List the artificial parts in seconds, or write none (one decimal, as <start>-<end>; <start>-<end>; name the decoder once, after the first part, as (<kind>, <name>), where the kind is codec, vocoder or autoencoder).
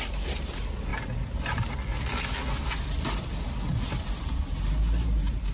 none